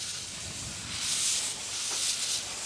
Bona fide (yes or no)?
yes